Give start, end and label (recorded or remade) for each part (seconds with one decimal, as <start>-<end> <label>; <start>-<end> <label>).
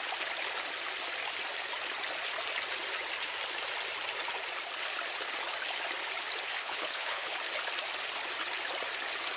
0.0-6.6 recorded; 6.6-7.4 remade; 7.4-9.4 recorded